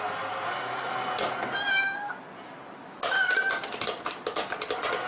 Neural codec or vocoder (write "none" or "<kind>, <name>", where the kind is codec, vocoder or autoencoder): none